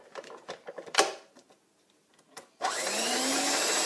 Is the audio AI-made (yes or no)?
yes